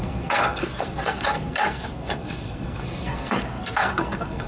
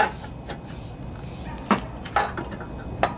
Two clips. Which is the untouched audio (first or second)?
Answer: second